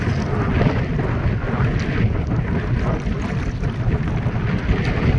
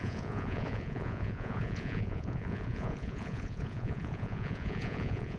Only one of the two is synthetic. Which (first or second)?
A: second